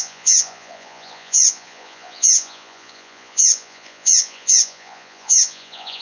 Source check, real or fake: fake